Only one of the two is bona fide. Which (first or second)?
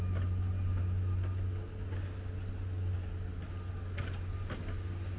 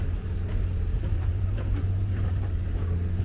first